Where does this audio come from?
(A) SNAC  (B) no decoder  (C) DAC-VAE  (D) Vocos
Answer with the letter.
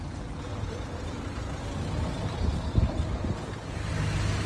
B